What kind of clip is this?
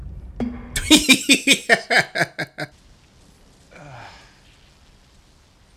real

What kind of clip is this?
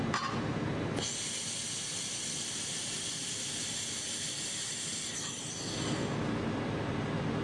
real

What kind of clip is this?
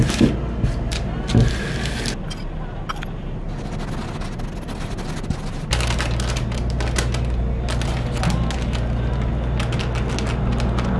real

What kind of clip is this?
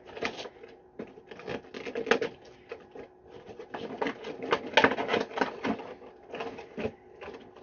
real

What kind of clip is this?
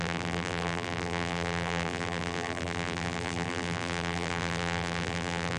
fake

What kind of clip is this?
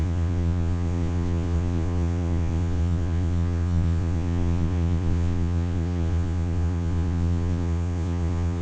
fake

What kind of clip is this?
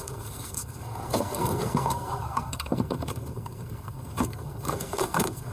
fake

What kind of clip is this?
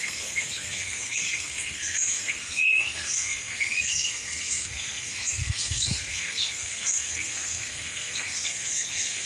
fake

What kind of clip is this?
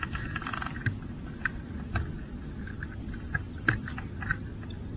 real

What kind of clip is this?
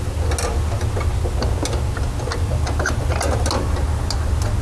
real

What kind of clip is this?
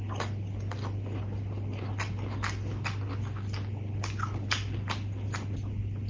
real